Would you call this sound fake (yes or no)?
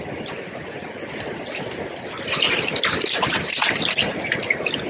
no